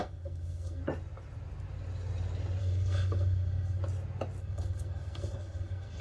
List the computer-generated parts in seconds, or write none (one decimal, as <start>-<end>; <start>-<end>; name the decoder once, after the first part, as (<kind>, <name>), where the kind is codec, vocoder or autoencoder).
0.0-0.8 (codec, SNAC); 2.6-3.8; 4.4-6.0